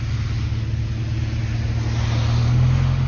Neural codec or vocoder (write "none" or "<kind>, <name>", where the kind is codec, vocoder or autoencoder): none